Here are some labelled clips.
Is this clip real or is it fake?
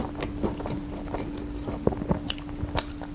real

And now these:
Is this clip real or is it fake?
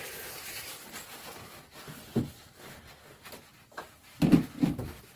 real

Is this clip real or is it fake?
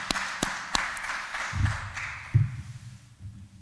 real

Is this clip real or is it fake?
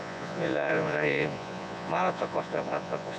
fake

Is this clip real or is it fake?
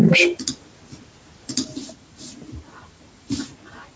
real